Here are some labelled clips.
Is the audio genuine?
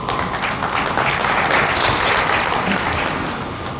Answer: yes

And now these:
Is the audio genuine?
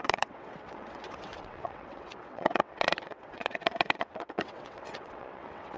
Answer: no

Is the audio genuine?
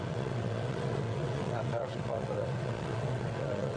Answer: no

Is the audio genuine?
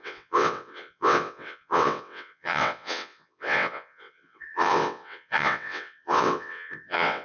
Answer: no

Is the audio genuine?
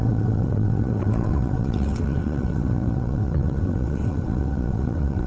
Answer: no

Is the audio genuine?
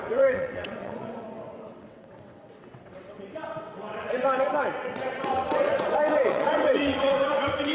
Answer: no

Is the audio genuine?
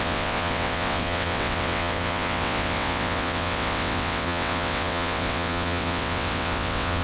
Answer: no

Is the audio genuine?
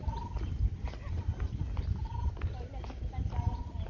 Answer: yes